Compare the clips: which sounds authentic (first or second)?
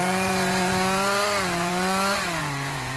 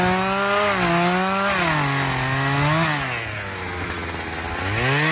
second